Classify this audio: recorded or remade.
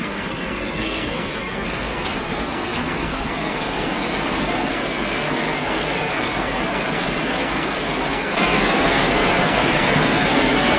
remade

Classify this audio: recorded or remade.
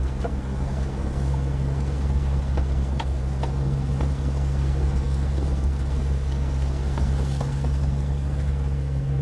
remade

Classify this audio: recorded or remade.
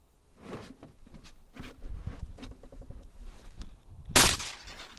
recorded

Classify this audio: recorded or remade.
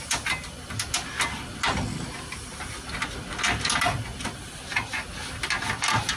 recorded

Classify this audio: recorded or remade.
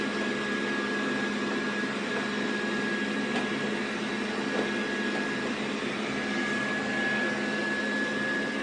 recorded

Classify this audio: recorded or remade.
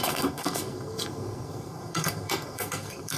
remade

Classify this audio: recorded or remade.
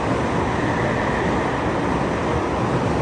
recorded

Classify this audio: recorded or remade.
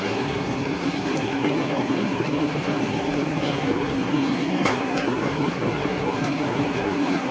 remade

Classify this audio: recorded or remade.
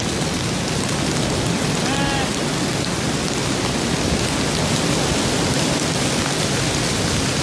recorded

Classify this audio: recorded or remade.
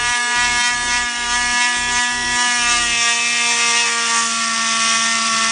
recorded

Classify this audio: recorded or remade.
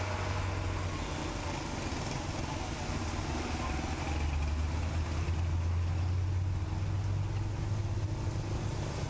recorded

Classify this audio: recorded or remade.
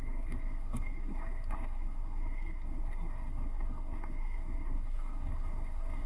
remade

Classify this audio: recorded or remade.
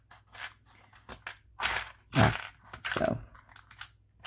recorded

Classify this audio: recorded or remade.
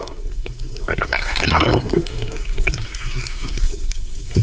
remade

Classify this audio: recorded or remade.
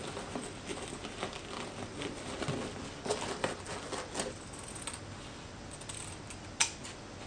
recorded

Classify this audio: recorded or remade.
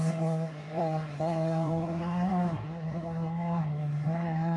remade